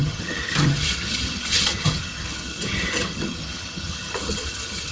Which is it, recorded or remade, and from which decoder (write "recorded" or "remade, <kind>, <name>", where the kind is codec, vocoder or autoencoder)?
remade, vocoder, HiFi-GAN